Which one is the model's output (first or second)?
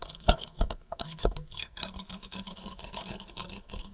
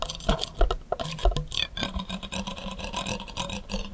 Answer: first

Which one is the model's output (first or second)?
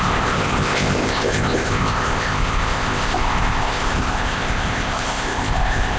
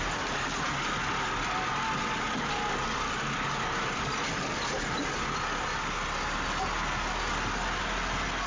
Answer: first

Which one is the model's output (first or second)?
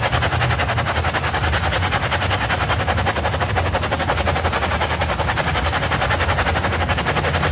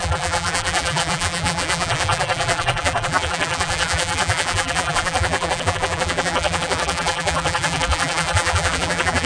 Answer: second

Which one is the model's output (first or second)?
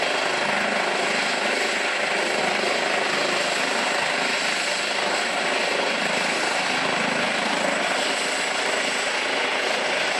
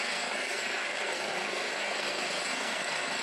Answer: second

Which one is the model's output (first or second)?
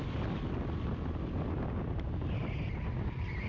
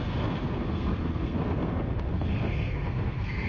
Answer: second